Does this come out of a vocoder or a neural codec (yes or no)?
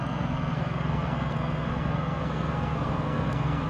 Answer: yes